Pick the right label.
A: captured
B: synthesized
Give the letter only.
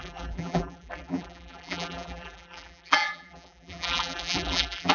B